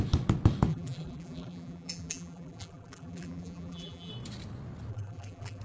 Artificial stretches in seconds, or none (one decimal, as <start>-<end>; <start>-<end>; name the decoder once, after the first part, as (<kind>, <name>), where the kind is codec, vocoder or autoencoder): 0.7-4.1 (vocoder, BigVGAN v2); 4.9-5.6

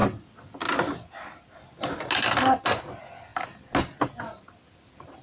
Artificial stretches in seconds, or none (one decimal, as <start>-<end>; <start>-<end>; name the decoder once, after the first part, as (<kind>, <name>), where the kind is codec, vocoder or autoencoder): none

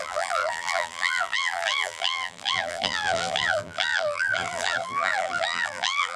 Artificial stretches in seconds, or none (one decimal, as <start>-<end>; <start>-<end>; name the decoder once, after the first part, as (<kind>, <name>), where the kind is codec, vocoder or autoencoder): 0.0-6.2 (vocoder, BigVGAN v2)

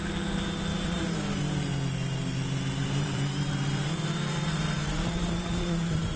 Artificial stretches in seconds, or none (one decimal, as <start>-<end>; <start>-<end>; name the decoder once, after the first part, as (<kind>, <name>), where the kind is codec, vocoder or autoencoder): 0.7-1.4 (vocoder, BigVGAN v2); 2.8-6.2